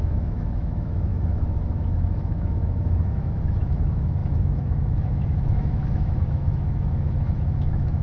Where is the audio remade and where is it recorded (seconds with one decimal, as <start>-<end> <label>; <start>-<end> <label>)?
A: 0.0-8.0 remade